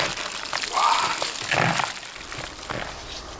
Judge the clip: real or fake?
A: real